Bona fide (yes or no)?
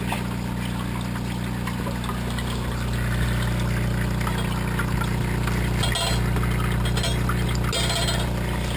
yes